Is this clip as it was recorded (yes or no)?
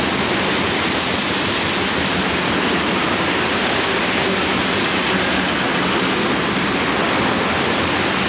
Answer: yes